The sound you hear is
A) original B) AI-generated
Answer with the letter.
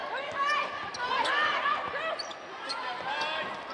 A